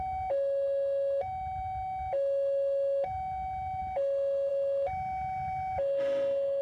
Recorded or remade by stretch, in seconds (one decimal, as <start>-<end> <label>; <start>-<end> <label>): 0.0-6.6 recorded